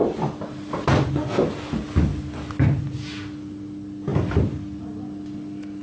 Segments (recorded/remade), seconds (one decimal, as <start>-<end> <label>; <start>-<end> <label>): 0.0-5.8 recorded